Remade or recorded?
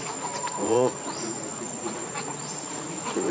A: remade